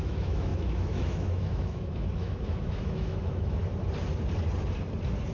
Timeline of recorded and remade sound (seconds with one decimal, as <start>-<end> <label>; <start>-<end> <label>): 0.0-3.6 remade; 3.6-5.3 recorded

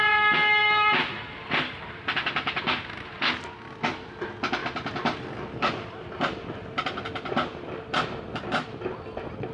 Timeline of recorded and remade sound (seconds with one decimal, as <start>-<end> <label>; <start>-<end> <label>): 0.0-0.6 recorded; 0.6-1.8 remade; 1.8-4.6 recorded; 4.6-8.2 remade; 8.2-9.5 recorded

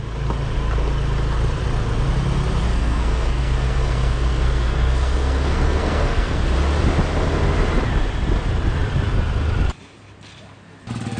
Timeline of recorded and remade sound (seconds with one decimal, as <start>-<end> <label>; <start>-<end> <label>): 0.0-2.7 recorded; 2.7-6.4 remade; 6.4-11.2 recorded